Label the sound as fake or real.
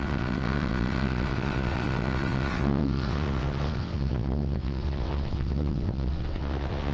fake